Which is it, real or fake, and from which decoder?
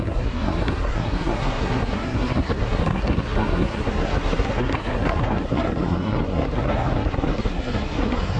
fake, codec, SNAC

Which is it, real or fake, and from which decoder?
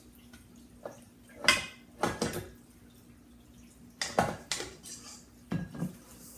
real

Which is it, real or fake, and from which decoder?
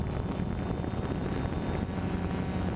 real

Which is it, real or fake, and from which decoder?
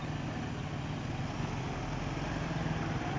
real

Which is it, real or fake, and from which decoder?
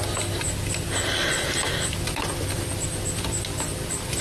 real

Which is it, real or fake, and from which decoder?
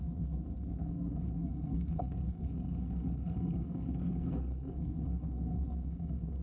fake, codec, SNAC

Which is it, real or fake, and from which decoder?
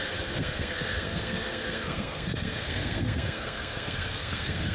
fake, codec, SNAC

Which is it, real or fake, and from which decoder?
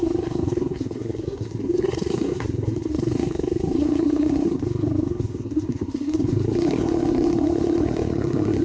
fake, codec, SNAC